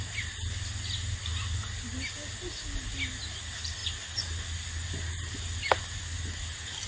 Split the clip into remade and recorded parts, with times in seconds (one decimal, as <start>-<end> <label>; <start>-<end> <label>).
0.0-6.9 recorded